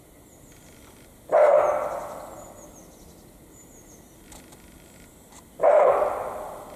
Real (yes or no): yes